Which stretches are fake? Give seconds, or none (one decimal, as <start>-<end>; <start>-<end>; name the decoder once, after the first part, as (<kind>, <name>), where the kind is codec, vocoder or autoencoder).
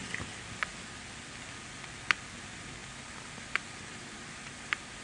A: 2.4-5.0 (vocoder, BigVGAN v2)